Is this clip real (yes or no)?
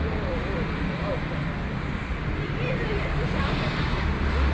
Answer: no